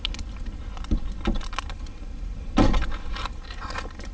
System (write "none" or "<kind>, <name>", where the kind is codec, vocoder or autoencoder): none